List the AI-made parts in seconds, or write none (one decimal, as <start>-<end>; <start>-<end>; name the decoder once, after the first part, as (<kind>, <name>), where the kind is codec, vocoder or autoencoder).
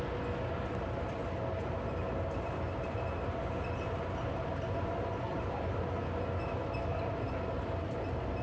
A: none